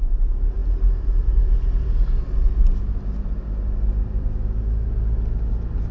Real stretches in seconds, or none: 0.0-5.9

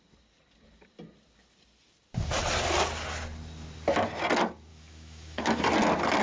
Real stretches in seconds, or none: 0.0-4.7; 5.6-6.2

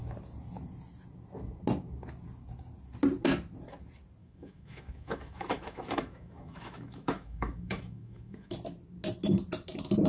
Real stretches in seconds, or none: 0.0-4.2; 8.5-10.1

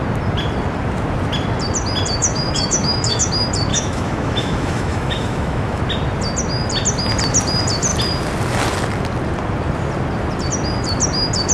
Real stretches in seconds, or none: 0.0-2.2; 3.3-3.7; 5.8-11.5

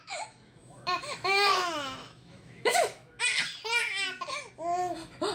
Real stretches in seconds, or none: 3.2-5.3